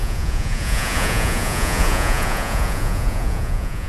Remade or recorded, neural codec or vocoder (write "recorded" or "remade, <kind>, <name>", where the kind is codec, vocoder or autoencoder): remade, vocoder, Vocos